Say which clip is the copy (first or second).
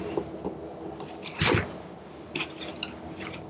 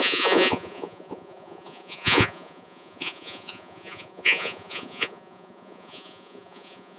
second